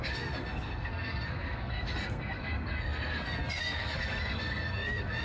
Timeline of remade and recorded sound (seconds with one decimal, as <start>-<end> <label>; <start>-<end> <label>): 0.0-5.2 remade